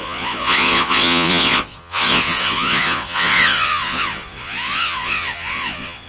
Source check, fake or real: fake